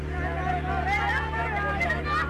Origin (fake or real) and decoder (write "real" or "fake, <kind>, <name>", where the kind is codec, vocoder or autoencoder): real